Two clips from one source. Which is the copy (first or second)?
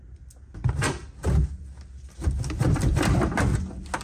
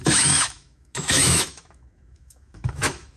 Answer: second